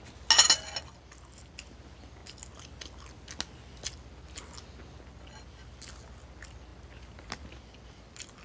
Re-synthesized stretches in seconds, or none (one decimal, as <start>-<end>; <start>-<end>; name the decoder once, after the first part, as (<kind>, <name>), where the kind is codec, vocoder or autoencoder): none

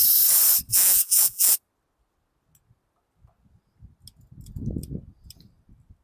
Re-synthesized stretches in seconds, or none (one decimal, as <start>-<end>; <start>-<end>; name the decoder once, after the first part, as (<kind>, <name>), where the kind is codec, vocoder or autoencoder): 0.7-1.5 (vocoder, Vocos)

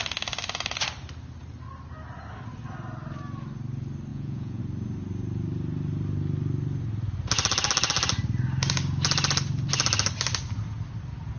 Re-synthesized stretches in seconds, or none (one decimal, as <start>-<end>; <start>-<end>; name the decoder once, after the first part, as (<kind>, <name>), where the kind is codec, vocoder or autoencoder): 4.1-4.6 (vocoder, Vocos)

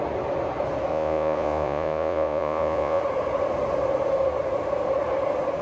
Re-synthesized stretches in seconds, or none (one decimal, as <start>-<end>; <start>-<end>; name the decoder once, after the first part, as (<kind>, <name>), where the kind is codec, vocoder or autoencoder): 0.9-3.0 (vocoder, Vocos)

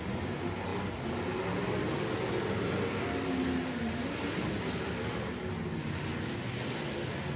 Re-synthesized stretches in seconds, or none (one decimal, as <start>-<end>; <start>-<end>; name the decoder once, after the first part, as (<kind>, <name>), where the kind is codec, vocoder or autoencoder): none